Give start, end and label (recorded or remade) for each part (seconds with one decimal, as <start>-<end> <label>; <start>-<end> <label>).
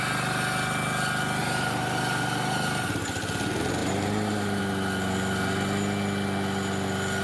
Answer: 0.0-1.4 recorded; 1.4-3.3 remade; 3.3-3.8 recorded; 3.8-4.6 remade; 4.6-7.2 recorded